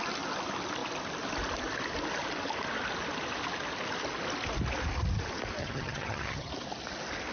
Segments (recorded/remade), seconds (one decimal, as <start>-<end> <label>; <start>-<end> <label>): 0.0-5.6 recorded; 5.6-6.5 remade; 6.5-7.3 recorded